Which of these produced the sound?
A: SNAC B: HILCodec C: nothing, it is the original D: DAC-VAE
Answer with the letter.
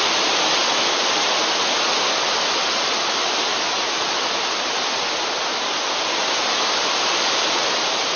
C